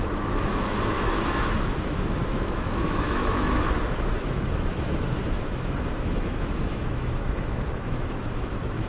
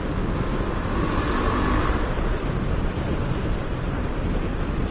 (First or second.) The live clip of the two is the second